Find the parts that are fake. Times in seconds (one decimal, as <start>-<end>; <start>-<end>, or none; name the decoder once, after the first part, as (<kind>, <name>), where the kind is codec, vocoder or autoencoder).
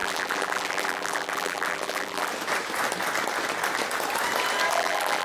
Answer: 0.0-2.3 (vocoder, BigVGAN v2); 4.7-5.2